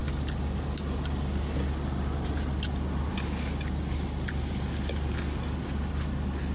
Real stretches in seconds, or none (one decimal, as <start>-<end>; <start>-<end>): 0.0-6.5